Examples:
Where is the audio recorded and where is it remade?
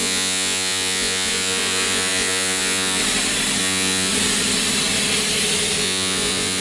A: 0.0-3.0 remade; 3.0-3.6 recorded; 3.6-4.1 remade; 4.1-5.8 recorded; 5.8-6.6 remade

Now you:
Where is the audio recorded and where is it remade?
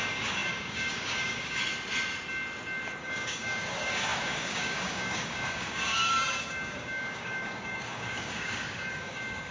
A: 0.0-1.6 remade; 1.6-3.0 recorded; 3.0-9.5 remade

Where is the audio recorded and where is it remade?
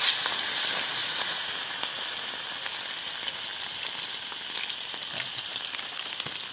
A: 0.0-1.0 recorded; 1.0-1.5 remade; 1.5-6.5 recorded